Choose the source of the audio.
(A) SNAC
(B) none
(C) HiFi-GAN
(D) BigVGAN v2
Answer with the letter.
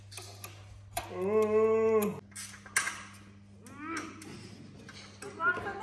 B